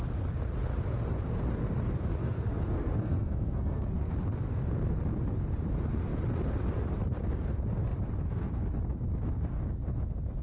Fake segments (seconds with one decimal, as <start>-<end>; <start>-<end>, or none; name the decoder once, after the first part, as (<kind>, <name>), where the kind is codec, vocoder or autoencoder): 2.2-4.1 (codec, SNAC)

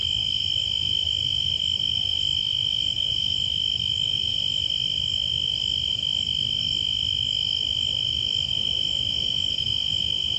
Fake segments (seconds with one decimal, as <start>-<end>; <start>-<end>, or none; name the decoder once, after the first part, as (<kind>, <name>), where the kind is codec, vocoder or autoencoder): none

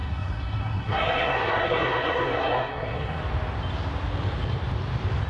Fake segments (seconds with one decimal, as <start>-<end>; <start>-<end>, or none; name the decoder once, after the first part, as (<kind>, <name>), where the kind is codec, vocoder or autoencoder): 0.0-3.2 (codec, SNAC)

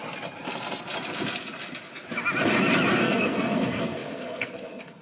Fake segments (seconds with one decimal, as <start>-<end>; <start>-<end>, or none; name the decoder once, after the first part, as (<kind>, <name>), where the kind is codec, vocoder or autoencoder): 3.0-5.0 (codec, SNAC)

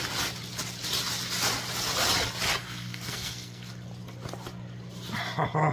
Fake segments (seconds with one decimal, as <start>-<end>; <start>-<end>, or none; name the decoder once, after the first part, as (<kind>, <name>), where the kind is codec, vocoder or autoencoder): 2.6-3.7 (codec, SNAC)

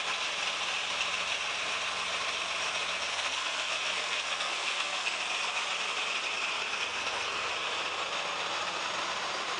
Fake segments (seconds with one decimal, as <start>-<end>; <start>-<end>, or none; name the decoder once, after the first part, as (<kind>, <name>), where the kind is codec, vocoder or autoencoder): 3.1-5.2 (codec, SNAC); 6.7-7.5